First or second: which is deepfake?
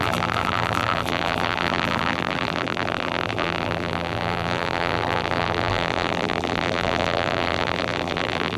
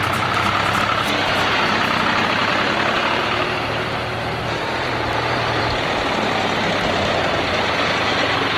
first